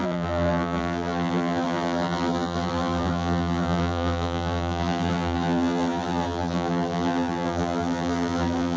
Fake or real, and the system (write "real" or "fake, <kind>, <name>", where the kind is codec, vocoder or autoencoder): fake, vocoder, BigVGAN v2